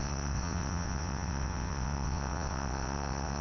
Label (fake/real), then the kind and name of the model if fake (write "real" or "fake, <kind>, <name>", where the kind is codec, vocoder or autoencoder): fake, vocoder, WaveNeXt